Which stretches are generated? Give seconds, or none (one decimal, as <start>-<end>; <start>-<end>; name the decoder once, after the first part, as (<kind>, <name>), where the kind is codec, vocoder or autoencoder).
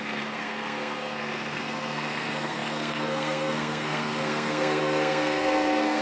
0.0-6.0 (codec, SNAC)